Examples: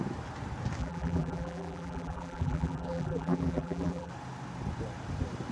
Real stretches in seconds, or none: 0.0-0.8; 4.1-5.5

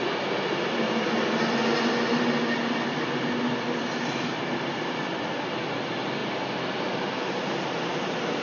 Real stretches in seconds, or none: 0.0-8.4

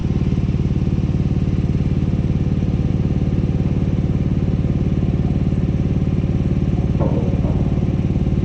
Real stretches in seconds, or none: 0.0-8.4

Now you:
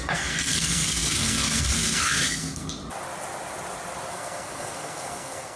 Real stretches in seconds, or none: 2.8-4.1

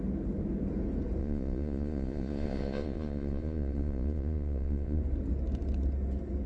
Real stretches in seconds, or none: 0.0-1.2; 5.0-6.5

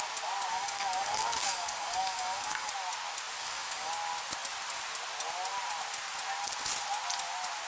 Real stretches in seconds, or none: 0.0-0.5; 2.7-3.4; 3.9-7.7

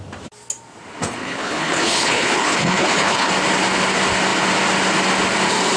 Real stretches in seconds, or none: 0.0-1.2; 3.3-5.8

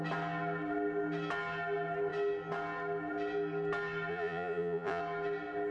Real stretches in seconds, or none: 0.0-4.1; 5.0-5.7